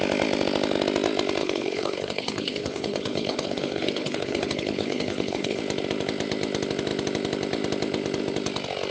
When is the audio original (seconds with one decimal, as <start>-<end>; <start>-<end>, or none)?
0.0-1.4; 5.6-8.9